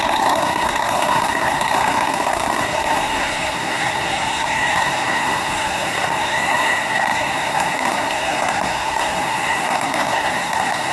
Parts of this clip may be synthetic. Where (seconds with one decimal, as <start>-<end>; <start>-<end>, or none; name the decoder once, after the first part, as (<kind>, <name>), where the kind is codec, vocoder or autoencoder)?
0.0-10.9 (codec, SNAC)